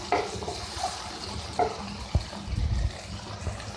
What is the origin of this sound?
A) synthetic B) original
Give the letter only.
B